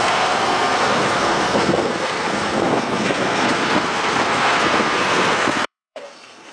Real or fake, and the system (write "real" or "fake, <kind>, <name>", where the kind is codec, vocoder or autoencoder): fake, codec, SNAC